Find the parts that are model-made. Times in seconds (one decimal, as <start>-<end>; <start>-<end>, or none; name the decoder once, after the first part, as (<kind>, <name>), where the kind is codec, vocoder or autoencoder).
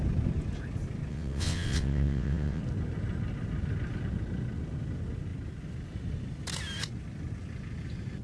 1.1-2.6 (vocoder, WaveNeXt)